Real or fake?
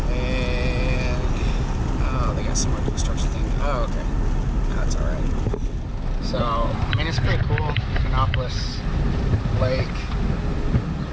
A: real